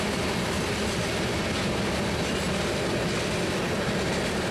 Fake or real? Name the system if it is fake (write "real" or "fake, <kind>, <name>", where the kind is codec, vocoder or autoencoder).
real